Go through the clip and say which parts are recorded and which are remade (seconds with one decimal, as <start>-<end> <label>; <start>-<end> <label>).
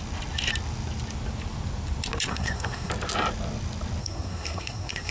0.0-2.3 recorded; 2.3-2.9 remade; 2.9-4.0 recorded; 4.0-5.1 remade